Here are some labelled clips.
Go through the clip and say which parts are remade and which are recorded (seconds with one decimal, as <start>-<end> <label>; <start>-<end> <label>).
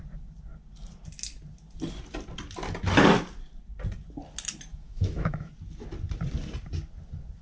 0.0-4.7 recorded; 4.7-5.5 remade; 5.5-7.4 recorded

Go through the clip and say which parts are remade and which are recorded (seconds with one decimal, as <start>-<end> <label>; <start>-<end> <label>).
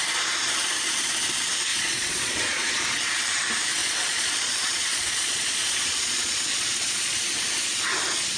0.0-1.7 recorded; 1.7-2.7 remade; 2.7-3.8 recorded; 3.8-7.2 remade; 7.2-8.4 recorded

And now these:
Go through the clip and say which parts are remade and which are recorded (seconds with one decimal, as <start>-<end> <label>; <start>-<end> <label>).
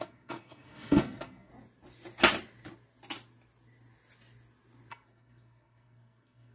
0.0-1.5 remade; 1.5-4.9 recorded; 4.9-6.5 remade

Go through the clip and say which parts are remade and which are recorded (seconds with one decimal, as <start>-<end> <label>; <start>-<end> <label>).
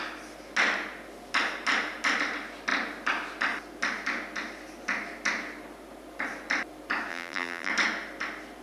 0.0-7.1 recorded; 7.1-7.7 remade; 7.7-8.6 recorded